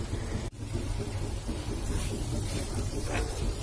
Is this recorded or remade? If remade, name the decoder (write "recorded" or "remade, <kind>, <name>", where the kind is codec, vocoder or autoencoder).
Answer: remade, vocoder, BigVGAN v2